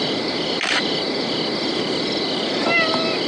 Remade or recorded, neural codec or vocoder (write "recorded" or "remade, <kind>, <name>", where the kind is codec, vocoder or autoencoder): recorded